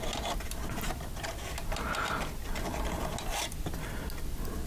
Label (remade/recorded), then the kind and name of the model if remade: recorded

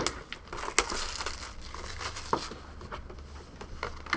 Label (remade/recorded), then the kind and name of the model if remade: recorded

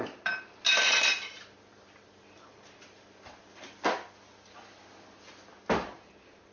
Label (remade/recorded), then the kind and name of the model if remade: recorded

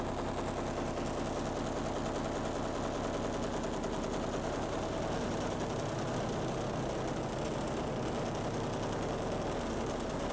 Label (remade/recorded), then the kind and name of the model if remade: recorded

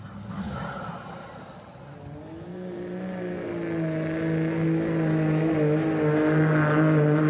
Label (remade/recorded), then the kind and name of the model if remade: recorded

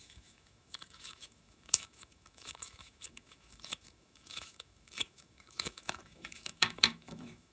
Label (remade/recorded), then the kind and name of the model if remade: remade, autoencoder, DAC-VAE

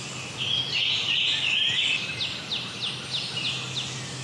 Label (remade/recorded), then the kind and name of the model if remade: recorded